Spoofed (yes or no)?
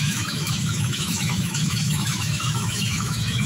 yes